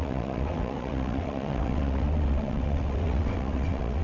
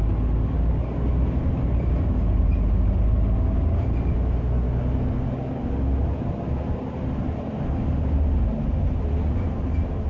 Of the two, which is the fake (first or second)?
first